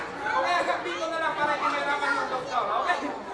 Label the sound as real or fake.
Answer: real